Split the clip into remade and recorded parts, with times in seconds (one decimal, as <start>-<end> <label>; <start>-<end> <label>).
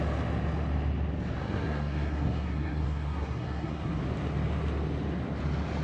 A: 0.0-1.4 recorded; 1.4-4.0 remade; 4.0-5.8 recorded